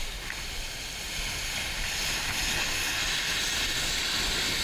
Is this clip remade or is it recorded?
recorded